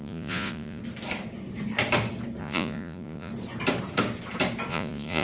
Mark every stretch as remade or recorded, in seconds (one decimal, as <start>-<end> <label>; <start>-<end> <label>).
0.0-0.8 remade; 0.8-2.4 recorded; 2.4-3.3 remade; 3.3-4.7 recorded; 4.7-5.2 remade